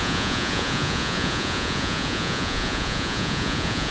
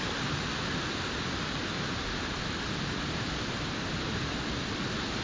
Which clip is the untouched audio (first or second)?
second